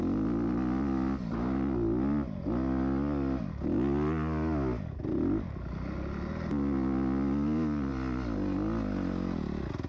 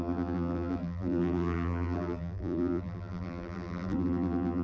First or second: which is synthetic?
second